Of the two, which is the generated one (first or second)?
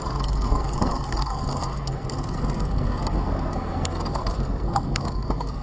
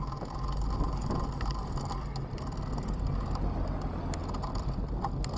first